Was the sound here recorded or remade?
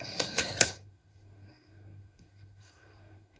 remade